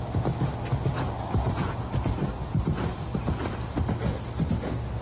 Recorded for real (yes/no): yes